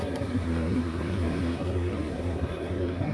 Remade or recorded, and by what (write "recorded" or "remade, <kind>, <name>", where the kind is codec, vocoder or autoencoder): remade, codec, SNAC